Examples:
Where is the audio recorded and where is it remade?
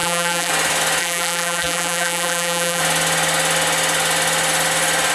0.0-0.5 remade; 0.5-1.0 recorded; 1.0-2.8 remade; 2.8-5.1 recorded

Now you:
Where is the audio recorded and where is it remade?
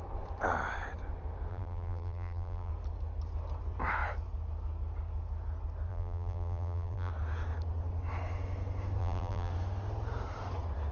0.0-1.5 recorded; 1.5-2.7 remade; 2.7-5.9 recorded; 5.9-7.1 remade; 7.1-9.0 recorded; 9.0-9.5 remade; 9.5-10.9 recorded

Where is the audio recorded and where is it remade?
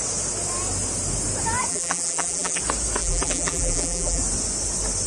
0.0-1.7 recorded; 1.7-2.6 remade; 2.6-3.0 recorded; 3.0-4.2 remade; 4.2-5.1 recorded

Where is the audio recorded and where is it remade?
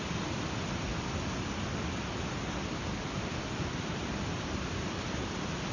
0.0-0.9 remade; 0.9-4.3 recorded; 4.3-5.7 remade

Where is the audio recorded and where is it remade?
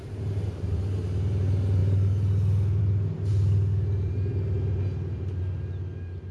0.0-6.3 recorded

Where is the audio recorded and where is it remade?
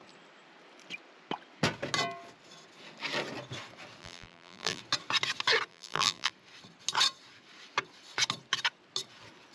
0.0-4.0 recorded; 4.0-4.8 remade; 4.8-5.7 recorded; 5.7-6.3 remade; 6.3-9.5 recorded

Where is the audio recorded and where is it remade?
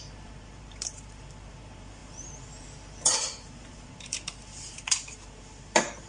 0.0-6.1 remade